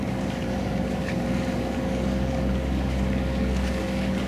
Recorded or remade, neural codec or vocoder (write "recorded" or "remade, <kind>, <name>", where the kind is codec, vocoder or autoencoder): remade, codec, DAC